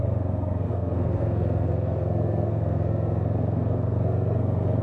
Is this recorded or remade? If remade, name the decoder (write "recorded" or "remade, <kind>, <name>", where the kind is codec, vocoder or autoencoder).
remade, codec, SNAC